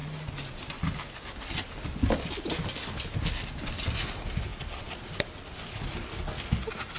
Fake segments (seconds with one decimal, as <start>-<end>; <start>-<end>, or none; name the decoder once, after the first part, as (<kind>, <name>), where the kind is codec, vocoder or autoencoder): none